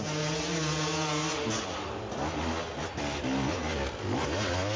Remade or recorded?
recorded